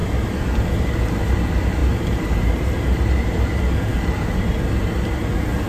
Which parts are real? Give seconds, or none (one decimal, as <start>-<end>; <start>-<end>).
0.0-1.8; 3.4-5.7